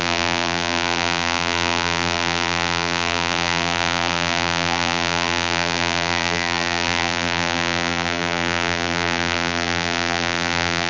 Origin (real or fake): fake